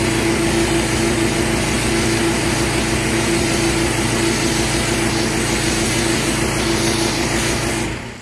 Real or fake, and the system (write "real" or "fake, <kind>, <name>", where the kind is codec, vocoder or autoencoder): real